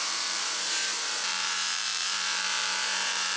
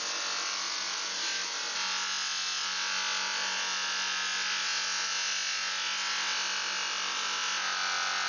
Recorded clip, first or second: second